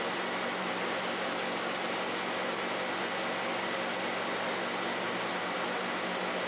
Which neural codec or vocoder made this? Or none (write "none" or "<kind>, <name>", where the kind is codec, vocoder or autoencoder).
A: none